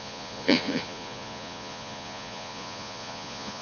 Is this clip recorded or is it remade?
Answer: remade